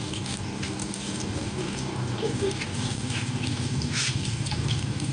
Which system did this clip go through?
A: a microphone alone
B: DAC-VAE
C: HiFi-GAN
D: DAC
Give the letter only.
D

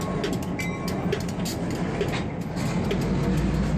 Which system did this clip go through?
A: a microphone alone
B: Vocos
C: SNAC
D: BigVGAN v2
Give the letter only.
A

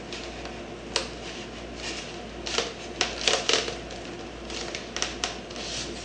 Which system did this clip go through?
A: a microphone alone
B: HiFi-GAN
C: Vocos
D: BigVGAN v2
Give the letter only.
A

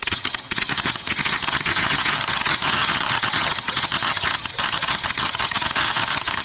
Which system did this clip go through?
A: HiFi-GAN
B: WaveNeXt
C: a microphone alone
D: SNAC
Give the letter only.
A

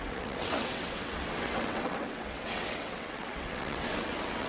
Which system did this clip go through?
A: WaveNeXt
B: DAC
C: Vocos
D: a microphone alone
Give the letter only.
A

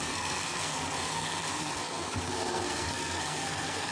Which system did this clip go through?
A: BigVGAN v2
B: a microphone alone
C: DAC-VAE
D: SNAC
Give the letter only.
D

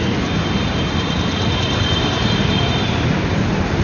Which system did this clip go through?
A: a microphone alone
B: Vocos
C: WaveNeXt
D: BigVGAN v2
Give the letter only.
D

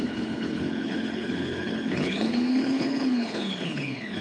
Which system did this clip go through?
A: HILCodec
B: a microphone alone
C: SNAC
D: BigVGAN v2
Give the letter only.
A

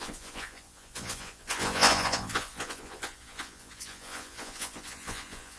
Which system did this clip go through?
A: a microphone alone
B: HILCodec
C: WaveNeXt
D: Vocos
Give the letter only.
D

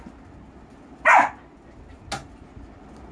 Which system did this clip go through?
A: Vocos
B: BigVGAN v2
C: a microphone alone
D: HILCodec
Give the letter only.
C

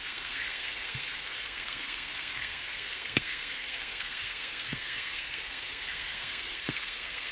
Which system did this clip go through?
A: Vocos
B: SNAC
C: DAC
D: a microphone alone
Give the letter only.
B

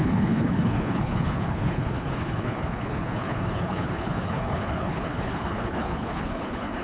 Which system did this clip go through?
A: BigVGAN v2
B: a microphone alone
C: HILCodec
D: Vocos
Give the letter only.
C